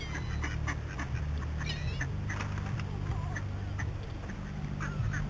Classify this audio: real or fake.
real